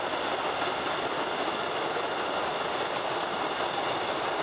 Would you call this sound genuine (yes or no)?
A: yes